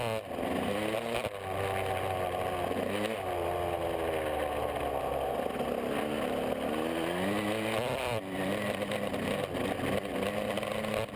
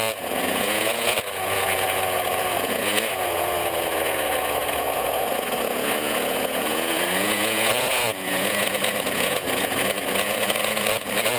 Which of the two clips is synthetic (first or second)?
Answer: second